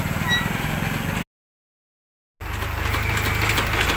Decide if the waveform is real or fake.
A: real